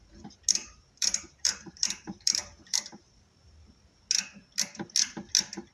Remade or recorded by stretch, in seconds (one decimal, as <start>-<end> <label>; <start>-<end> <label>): 0.0-0.6 recorded; 0.6-4.0 remade; 4.0-5.7 recorded